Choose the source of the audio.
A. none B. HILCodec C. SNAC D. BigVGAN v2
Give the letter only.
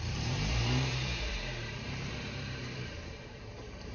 D